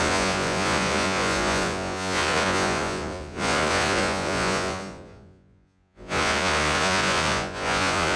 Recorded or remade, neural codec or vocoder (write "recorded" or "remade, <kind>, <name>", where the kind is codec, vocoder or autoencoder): remade, vocoder, Vocos